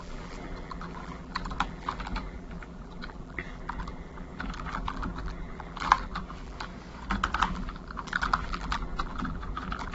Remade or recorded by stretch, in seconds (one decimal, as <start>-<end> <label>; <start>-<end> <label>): 0.0-6.7 remade; 6.7-7.4 recorded; 7.4-9.9 remade